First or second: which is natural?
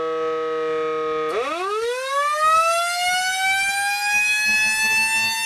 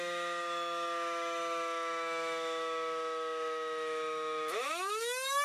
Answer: first